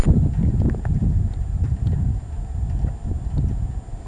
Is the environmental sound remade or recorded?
recorded